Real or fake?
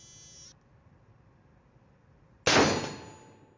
real